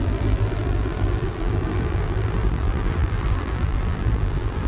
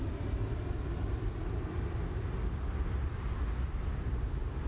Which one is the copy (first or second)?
first